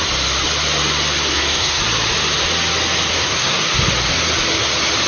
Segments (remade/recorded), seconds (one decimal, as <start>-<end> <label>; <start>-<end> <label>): 0.0-1.3 recorded; 1.3-1.8 remade; 1.8-3.1 recorded; 3.1-3.6 remade; 3.6-5.1 recorded